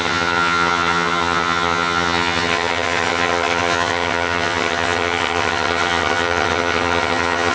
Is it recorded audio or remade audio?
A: remade